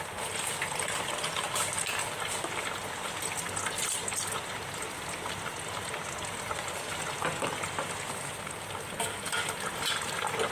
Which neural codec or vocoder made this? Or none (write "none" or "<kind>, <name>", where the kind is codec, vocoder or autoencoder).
none